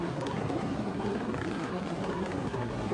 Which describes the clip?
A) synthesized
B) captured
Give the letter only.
A